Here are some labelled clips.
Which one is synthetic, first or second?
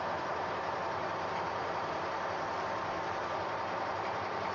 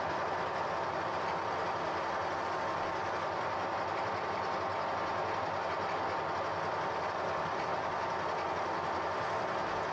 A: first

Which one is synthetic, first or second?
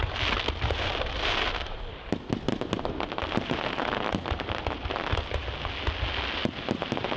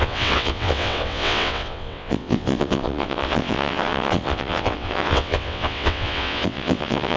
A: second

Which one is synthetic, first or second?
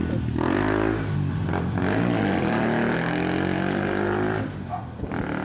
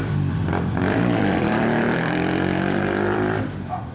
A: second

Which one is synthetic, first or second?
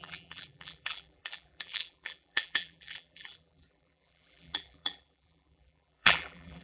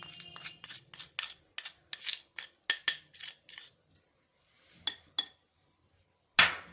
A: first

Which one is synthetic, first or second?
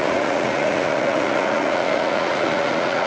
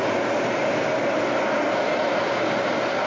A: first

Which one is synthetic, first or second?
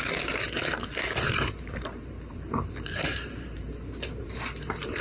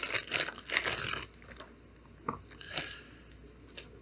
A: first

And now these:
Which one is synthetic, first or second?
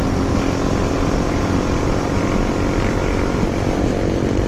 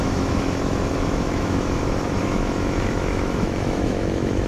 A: second